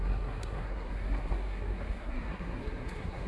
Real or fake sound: fake